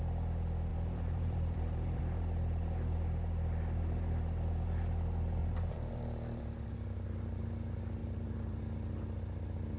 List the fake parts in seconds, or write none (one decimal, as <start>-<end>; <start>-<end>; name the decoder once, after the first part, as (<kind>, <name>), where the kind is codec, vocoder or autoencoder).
0.7-2.0 (vocoder, BigVGAN v2); 5.4-7.4; 8.0-8.6